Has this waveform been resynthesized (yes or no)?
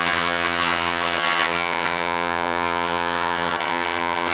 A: yes